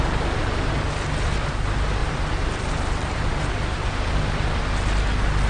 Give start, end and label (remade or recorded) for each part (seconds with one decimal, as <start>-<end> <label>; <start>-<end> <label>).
0.0-2.0 recorded; 2.0-3.1 remade; 3.1-5.5 recorded